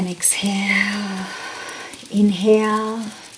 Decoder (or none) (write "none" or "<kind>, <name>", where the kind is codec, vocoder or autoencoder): none